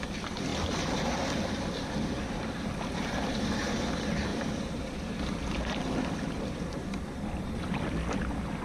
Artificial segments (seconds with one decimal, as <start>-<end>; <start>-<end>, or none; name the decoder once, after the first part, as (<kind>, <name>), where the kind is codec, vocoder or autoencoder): 4.3-5.1 (vocoder, BigVGAN v2)